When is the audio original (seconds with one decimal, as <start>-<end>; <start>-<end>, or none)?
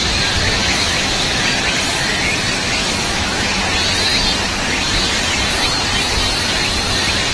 0.0-0.6; 1.4-2.8; 3.6-7.3